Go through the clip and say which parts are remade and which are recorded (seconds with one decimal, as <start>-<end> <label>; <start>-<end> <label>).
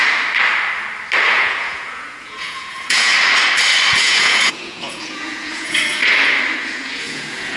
0.0-1.3 recorded; 1.3-3.1 remade; 3.1-4.0 recorded; 4.0-6.0 remade; 6.0-6.6 recorded; 6.6-7.6 remade